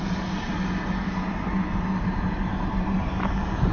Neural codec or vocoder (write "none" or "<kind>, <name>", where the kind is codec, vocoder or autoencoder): none